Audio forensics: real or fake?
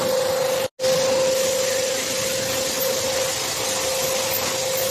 real